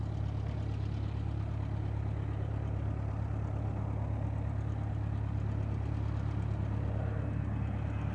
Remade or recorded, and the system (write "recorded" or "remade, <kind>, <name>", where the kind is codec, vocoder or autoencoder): recorded